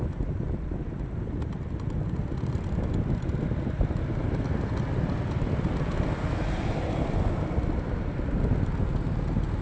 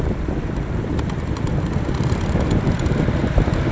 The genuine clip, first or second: first